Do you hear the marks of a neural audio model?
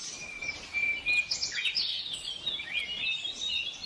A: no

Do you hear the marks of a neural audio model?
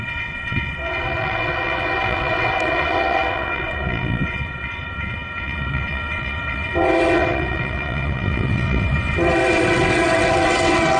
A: yes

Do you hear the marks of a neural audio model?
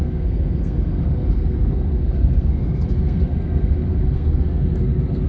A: yes